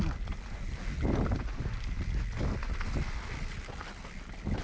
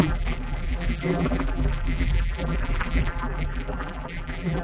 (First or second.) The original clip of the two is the first